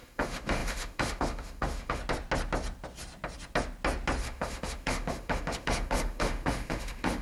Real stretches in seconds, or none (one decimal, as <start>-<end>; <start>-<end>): 2.0-4.2